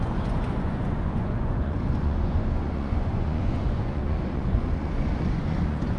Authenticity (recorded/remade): remade